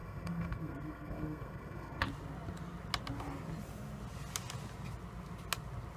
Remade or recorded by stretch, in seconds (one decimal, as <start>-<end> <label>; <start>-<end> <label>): 0.0-2.0 remade; 2.0-6.0 recorded

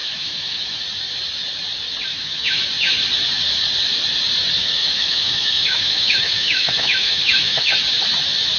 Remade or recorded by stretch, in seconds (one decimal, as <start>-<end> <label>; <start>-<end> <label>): 0.0-0.8 remade; 0.8-2.1 recorded; 2.1-2.6 remade; 2.6-4.6 recorded; 4.6-7.7 remade; 7.7-8.6 recorded